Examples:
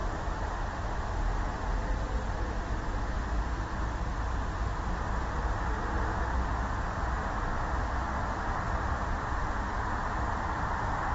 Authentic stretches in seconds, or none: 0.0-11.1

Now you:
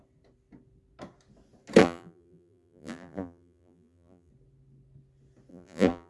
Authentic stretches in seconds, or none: 0.0-1.8; 4.3-5.5